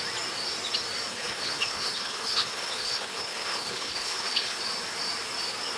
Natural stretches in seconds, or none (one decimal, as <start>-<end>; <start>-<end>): 0.0-1.1; 4.6-5.8